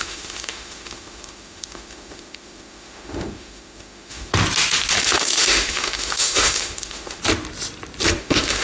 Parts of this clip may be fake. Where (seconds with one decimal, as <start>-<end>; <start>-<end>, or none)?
0.0-4.3; 5.0-7.2; 8.2-8.6